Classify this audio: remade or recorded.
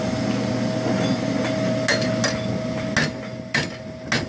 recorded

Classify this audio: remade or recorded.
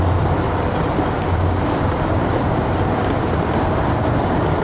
remade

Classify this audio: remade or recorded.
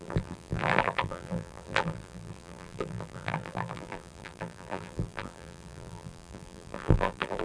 remade